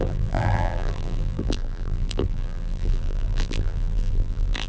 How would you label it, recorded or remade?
remade